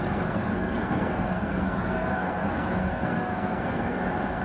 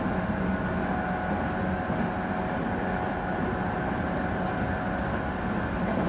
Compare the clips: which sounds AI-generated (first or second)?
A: first